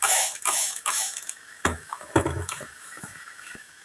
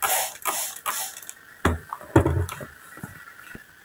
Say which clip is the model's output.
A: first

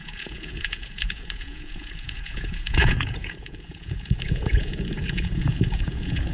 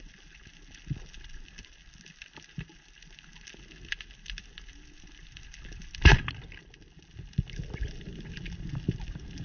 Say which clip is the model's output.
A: first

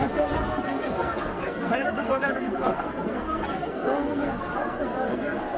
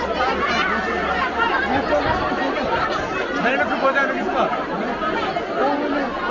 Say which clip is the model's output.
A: first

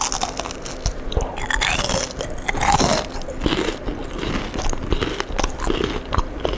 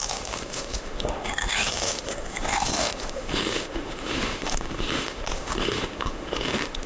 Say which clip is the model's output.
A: second